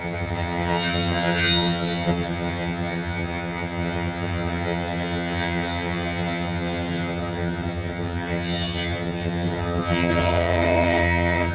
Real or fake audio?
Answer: fake